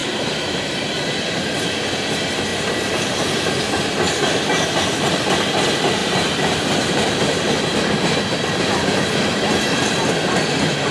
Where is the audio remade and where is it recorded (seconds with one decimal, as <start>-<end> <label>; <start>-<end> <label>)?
0.0-0.9 remade; 0.9-2.5 recorded; 2.5-4.1 remade; 4.1-6.0 recorded; 6.0-7.1 remade; 7.1-10.9 recorded